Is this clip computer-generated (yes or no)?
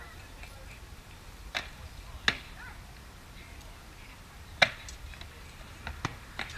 no